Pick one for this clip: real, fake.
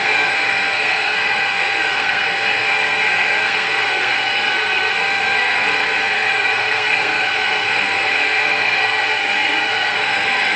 fake